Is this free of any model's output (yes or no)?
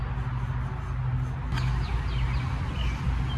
yes